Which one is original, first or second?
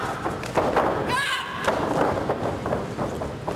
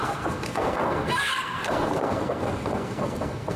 first